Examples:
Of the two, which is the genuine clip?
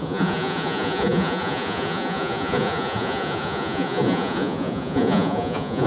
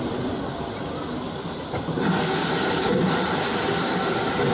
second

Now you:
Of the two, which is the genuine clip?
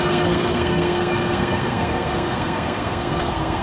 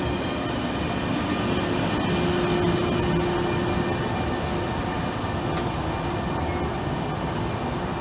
second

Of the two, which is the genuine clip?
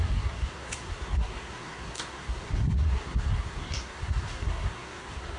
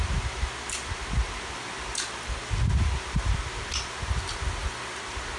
second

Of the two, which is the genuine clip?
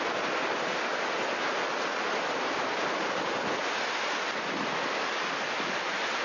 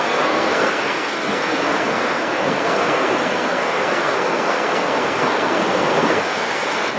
first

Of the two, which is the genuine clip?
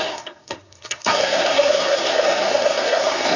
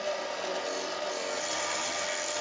second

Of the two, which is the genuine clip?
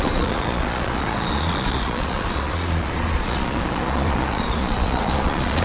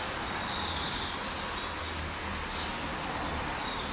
second